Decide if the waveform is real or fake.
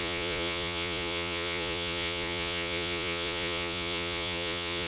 fake